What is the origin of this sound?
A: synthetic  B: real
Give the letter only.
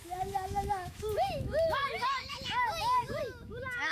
A